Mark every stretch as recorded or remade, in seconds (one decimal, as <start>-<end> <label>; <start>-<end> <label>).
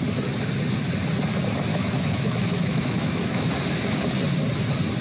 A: 0.0-1.7 recorded; 1.7-3.5 remade; 3.5-5.0 recorded